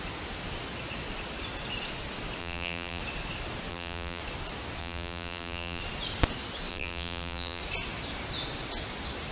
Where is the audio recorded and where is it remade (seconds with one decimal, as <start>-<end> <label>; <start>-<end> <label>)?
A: 0.0-2.4 recorded; 2.4-3.0 remade; 3.0-3.7 recorded; 3.7-4.2 remade; 4.2-4.8 recorded; 4.8-5.8 remade; 5.8-6.7 recorded; 6.7-7.6 remade; 7.6-9.3 recorded